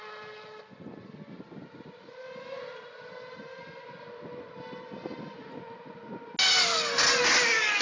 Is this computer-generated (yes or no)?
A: no